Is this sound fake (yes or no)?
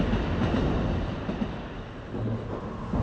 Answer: no